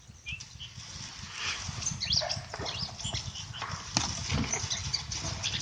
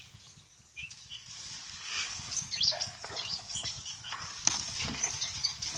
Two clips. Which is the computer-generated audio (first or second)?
second